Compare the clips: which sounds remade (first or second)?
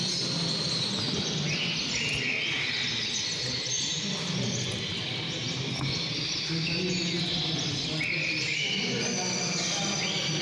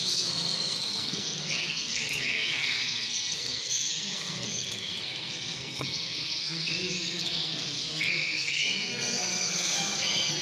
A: second